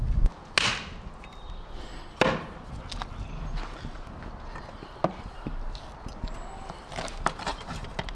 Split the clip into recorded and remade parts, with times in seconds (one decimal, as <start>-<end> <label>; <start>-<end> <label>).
0.0-7.5 recorded; 7.5-8.2 remade